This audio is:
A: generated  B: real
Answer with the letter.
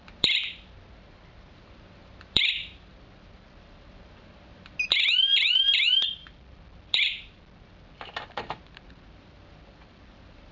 A